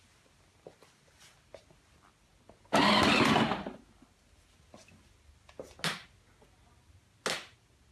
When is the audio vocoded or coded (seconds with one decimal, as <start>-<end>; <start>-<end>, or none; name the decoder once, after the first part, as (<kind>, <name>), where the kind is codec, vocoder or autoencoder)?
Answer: none